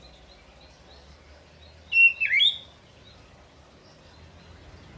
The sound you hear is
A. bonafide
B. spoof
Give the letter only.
A